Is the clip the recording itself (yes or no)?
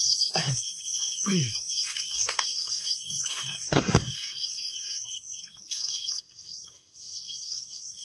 no